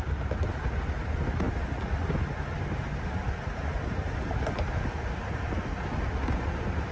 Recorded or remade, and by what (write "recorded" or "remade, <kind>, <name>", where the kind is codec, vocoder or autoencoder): recorded